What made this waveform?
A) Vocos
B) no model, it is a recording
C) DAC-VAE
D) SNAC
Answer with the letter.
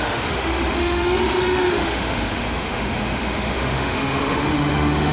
C